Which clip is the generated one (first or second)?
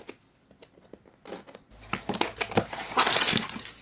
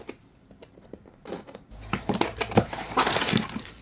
second